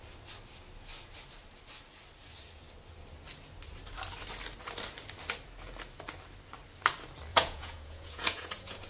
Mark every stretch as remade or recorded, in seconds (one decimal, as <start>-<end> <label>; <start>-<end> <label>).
0.0-7.3 recorded; 7.3-8.9 remade